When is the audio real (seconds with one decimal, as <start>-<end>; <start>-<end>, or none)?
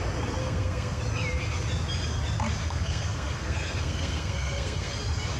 0.0-0.4; 1.0-2.6; 4.9-5.4